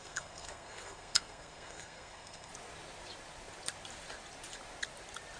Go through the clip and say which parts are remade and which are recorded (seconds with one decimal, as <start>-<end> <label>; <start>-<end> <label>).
0.0-2.5 remade; 2.5-5.4 recorded